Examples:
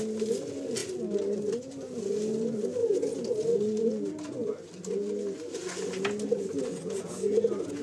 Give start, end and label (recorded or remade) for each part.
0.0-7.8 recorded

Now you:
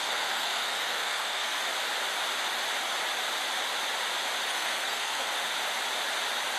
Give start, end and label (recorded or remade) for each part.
0.0-1.6 remade; 1.6-4.5 recorded; 4.5-5.3 remade; 5.3-6.6 recorded

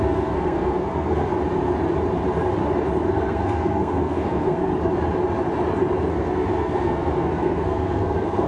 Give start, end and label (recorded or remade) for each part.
0.0-1.3 remade; 1.3-3.1 recorded; 3.1-4.7 remade; 4.7-6.1 recorded; 6.1-8.5 remade

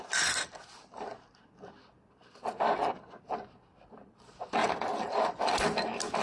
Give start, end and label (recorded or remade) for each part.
0.0-6.2 recorded

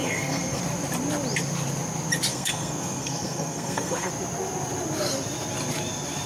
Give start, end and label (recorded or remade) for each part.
0.0-0.6 remade; 0.6-2.3 recorded; 2.3-4.1 remade; 4.1-6.3 recorded

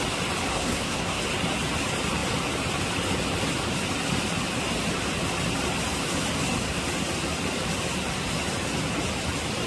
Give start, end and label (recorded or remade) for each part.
0.0-0.5 recorded; 0.5-1.2 remade; 1.2-9.7 recorded

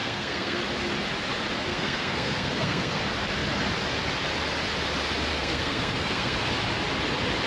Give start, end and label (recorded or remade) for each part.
0.0-0.6 remade; 0.6-1.7 recorded; 1.7-3.0 remade; 3.0-5.3 recorded; 5.3-6.5 remade; 6.5-7.5 recorded

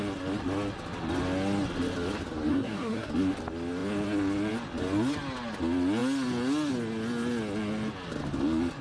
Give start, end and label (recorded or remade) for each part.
0.0-2.5 recorded; 2.5-3.1 remade; 3.1-8.8 recorded